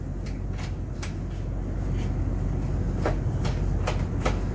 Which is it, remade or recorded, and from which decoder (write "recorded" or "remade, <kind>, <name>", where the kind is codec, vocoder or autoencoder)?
recorded